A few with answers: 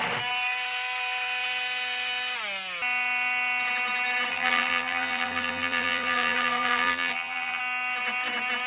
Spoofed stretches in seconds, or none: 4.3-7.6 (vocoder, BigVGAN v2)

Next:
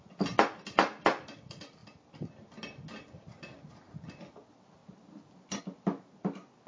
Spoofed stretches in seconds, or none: none

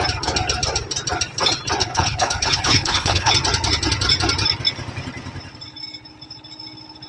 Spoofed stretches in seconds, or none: 1.8-3.3 (codec, HILCodec)

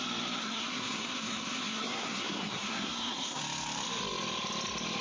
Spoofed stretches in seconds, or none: 0.4-3.4 (codec, SNAC)

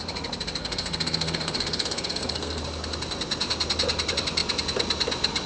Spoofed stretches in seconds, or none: 0.6-2.6 (codec, SNAC)

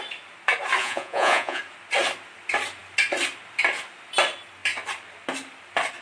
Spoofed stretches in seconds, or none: 0.8-1.6 (vocoder, Vocos)

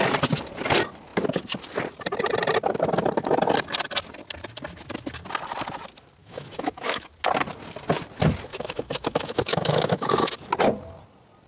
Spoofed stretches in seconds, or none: 6.2-7.1 (autoencoder, DAC-VAE); 8.5-10.3